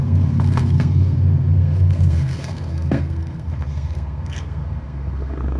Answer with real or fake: fake